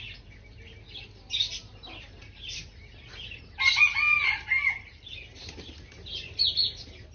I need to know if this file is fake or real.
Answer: real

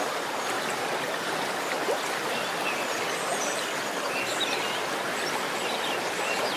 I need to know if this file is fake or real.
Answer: fake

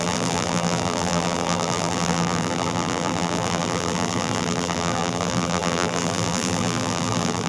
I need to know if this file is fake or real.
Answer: fake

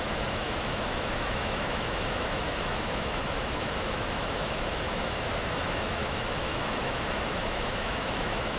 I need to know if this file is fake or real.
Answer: fake